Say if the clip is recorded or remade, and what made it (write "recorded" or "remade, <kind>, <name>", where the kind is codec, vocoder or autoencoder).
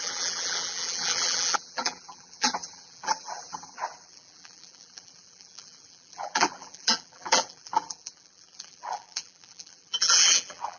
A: remade, vocoder, BigVGAN v2